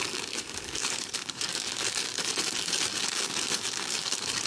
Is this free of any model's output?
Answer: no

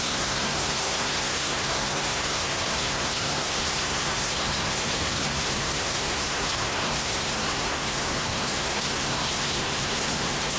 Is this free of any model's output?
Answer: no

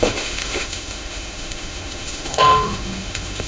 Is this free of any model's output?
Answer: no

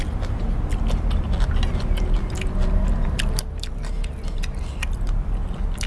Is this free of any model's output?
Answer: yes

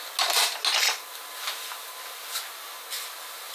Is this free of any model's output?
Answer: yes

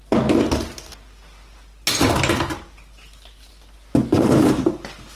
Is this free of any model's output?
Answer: yes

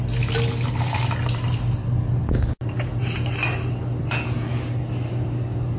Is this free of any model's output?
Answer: yes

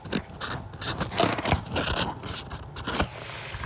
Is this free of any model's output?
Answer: yes